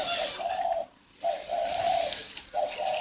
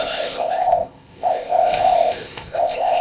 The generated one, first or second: second